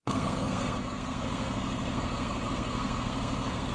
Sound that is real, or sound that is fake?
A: fake